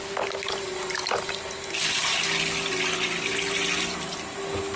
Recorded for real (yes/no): yes